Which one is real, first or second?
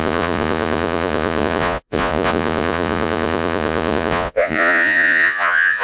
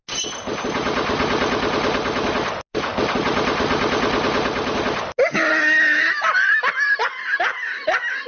second